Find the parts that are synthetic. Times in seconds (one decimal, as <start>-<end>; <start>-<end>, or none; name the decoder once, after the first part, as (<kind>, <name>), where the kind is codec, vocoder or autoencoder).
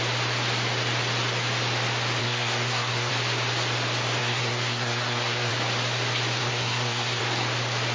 2.2-3.1 (codec, SNAC); 4.2-5.5; 6.4-7.2